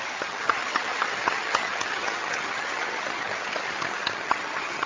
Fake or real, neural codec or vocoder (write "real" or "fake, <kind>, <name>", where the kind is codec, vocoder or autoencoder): fake, vocoder, HiFi-GAN